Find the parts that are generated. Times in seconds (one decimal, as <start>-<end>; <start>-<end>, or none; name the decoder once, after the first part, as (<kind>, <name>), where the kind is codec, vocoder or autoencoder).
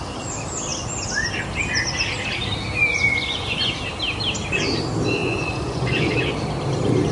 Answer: 2.9-3.7 (vocoder, Vocos); 5.2-6.1